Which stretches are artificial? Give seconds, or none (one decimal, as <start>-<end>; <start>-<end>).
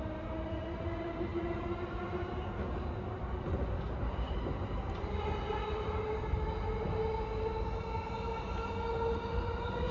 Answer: none